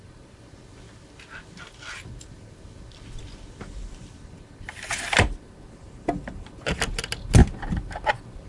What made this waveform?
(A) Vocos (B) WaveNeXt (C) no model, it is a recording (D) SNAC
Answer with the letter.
C